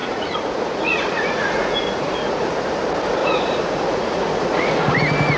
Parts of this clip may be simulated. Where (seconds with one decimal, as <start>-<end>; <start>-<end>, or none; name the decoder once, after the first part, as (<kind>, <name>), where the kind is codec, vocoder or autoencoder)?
0.0-2.6 (vocoder, Vocos); 3.2-5.0